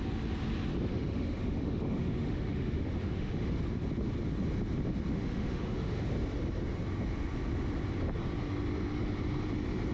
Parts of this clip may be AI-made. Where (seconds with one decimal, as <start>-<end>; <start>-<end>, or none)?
0.9-3.5; 5.1-6.1